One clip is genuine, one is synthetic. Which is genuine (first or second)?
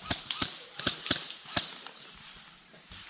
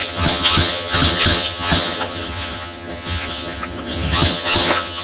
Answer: first